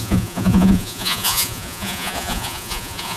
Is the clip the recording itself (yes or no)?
no